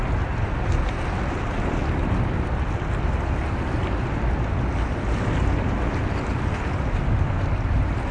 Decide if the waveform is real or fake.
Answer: real